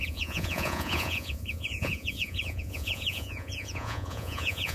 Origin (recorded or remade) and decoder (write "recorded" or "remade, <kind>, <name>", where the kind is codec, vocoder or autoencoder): remade, vocoder, Vocos